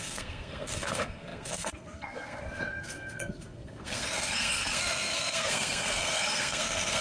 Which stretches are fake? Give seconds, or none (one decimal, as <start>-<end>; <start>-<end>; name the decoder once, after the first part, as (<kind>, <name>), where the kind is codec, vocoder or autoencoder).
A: 0.0-7.0 (codec, SNAC)